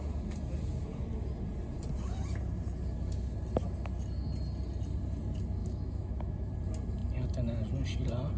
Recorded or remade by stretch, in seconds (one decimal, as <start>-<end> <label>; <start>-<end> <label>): 0.0-5.6 recorded; 5.6-6.5 remade; 6.5-8.4 recorded